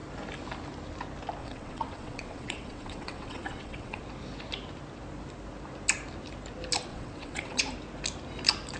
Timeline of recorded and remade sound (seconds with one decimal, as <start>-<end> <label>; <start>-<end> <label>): 0.0-1.4 recorded; 1.4-4.0 remade; 4.0-6.9 recorded; 6.9-7.6 remade; 7.6-8.8 recorded